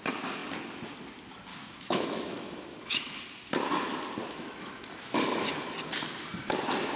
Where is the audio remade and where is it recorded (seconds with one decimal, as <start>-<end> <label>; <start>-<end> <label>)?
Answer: 0.0-1.5 recorded; 1.5-3.2 remade; 3.2-4.2 recorded; 4.2-5.0 remade; 5.0-7.0 recorded